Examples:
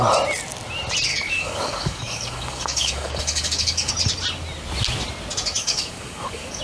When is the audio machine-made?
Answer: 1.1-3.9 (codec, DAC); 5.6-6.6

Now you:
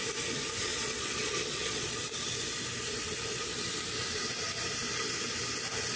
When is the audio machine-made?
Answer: 0.7-2.0 (vocoder, Vocos)

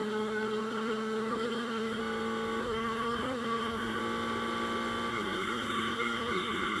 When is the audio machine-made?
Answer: 0.0-2.0 (codec, SNAC); 2.6-4.0; 5.1-6.8

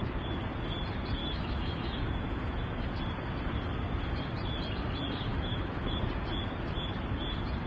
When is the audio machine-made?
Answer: 1.2-2.9 (autoencoder, DAC-VAE); 5.3-6.0

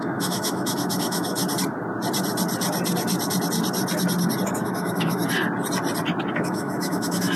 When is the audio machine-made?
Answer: 0.0-1.4 (autoencoder, DAC-VAE); 4.5-5.2; 6.3-7.4